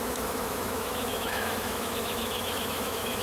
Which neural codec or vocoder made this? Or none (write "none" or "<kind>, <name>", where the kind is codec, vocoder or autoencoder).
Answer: autoencoder, DAC-VAE